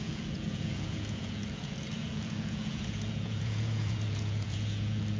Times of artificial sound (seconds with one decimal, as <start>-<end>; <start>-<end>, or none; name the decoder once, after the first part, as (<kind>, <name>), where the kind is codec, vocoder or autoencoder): 0.0-5.2 (vocoder, Vocos)